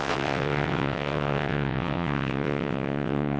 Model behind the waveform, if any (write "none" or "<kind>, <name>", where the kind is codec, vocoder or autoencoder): vocoder, WaveNeXt